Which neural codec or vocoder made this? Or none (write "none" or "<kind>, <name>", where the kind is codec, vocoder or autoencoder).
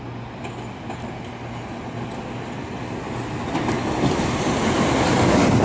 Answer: none